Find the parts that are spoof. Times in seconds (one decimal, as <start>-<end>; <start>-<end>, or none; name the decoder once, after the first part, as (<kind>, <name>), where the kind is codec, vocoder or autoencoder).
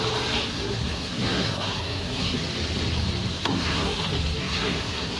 0.5-2.4 (codec, SNAC); 3.3-4.0; 4.4-5.2